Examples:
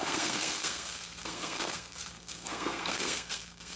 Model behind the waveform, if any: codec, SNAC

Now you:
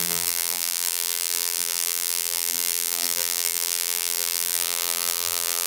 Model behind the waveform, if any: vocoder, BigVGAN v2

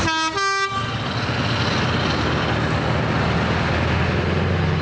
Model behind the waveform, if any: none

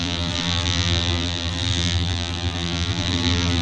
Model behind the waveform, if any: vocoder, BigVGAN v2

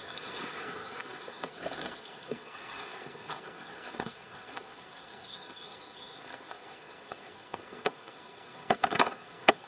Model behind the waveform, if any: codec, SNAC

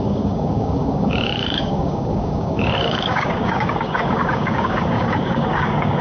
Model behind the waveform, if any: codec, DAC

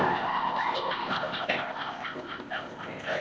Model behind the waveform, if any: codec, ZipCodec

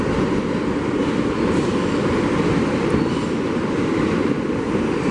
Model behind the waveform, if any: vocoder, BigVGAN v2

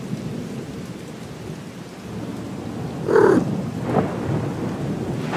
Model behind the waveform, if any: none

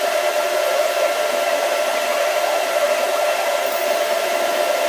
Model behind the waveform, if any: vocoder, BigVGAN v2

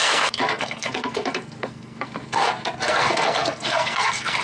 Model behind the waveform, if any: codec, SNAC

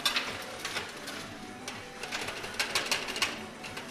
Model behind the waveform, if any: none